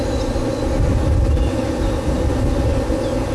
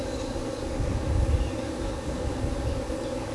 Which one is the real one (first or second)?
first